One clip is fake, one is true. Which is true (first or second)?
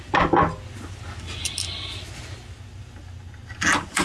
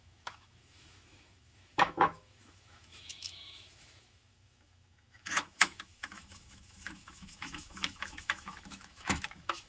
first